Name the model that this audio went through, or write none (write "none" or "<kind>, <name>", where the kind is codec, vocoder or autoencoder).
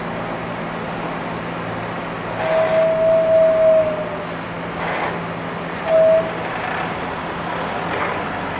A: none